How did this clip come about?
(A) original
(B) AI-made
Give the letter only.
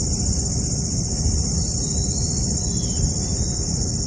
A